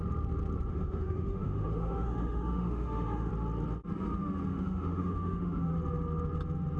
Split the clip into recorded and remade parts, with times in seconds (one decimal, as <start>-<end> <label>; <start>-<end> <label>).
0.0-0.7 recorded; 0.7-3.3 remade; 3.3-4.5 recorded; 4.5-5.7 remade; 5.7-6.8 recorded